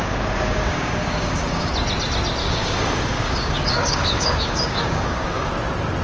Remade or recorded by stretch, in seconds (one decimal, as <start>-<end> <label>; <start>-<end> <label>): 0.0-1.7 remade; 1.7-2.4 recorded; 2.4-5.5 remade; 5.5-6.0 recorded